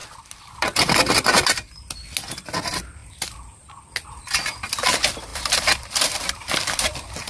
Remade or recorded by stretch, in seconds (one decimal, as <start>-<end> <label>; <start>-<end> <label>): 0.0-1.7 remade; 1.7-3.0 recorded; 3.0-3.8 remade; 3.8-5.3 recorded; 5.3-7.3 remade